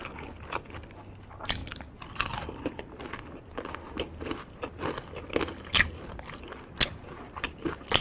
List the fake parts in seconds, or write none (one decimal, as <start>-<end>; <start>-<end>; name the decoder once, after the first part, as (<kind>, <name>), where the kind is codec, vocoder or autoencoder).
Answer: none